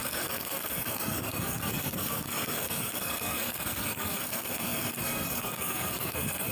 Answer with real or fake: fake